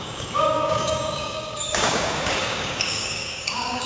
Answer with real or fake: fake